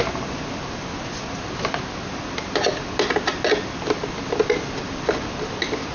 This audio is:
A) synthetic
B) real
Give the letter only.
B